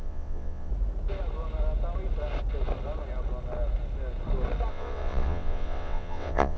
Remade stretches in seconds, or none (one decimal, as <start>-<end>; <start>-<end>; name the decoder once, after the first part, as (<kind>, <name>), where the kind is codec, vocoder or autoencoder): 0.0-0.7 (vocoder, WaveNeXt); 4.7-6.6